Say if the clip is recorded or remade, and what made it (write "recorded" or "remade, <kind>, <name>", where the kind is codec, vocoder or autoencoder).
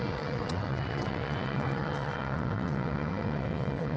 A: remade, vocoder, WaveNeXt